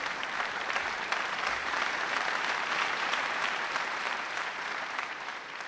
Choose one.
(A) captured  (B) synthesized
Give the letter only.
B